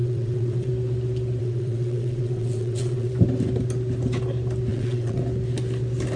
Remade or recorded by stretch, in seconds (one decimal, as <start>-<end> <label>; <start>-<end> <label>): 0.0-0.7 remade; 0.7-1.4 recorded; 1.4-3.1 remade; 3.1-4.7 recorded; 4.7-5.2 remade; 5.2-6.2 recorded